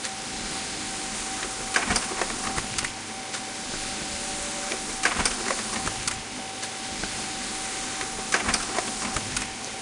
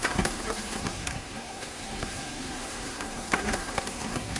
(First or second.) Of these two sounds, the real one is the first